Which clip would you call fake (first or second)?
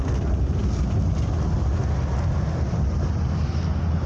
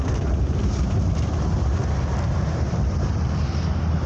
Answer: second